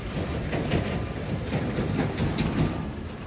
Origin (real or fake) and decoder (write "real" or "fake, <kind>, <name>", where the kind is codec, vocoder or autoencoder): fake, vocoder, BigVGAN v2